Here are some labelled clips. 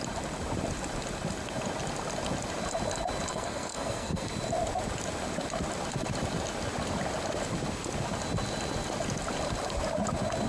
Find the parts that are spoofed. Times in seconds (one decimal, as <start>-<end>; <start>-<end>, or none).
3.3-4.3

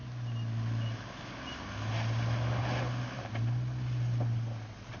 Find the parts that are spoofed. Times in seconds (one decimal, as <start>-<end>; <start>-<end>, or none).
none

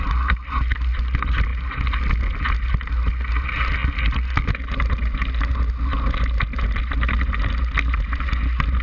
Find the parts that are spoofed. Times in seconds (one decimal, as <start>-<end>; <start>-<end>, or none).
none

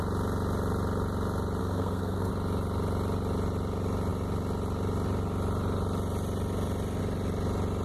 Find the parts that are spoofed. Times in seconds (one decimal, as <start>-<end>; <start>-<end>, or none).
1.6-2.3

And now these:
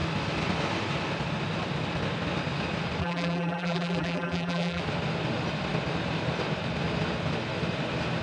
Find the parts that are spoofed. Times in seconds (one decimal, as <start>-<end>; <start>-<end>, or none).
3.0-4.8

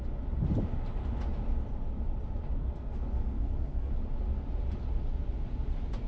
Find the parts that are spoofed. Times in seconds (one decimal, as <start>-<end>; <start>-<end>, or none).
2.6-3.9

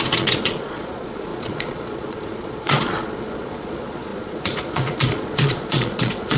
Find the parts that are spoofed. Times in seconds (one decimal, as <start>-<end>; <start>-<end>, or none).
0.0-6.4

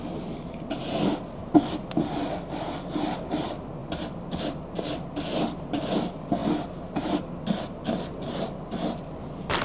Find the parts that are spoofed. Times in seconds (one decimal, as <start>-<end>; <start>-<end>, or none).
none